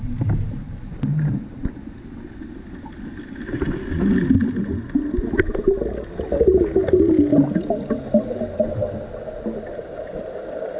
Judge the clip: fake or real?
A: real